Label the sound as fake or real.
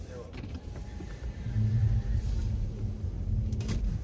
real